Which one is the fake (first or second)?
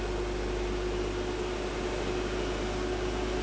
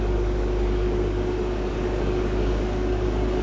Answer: second